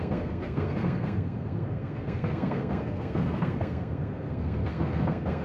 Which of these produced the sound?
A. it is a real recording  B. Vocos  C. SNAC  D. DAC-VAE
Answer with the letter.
C